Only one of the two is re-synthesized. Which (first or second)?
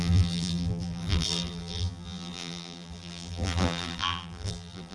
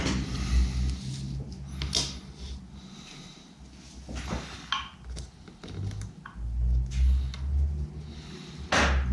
first